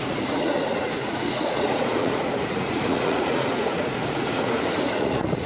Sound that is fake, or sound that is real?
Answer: fake